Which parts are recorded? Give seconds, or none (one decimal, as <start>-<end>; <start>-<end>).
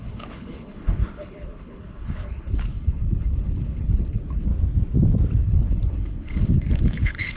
4.5-5.4